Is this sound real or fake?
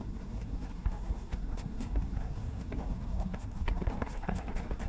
fake